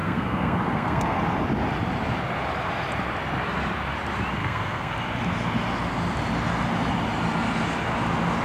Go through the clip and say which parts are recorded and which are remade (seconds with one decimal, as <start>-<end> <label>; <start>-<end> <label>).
0.0-1.2 remade; 1.2-4.4 recorded; 4.4-4.9 remade; 4.9-8.4 recorded